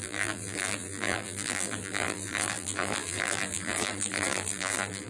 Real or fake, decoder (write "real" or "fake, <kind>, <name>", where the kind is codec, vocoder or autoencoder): fake, vocoder, BigVGAN v2